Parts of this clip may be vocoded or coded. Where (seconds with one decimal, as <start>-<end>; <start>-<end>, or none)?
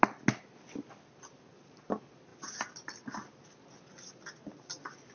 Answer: none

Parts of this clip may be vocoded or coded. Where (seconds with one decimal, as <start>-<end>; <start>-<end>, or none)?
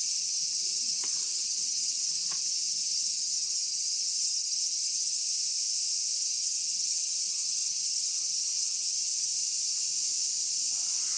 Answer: 0.0-5.2; 6.2-9.3